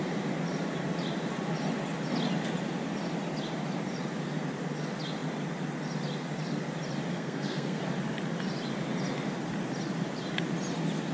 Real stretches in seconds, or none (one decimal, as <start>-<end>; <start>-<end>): 0.0-7.1; 7.8-11.1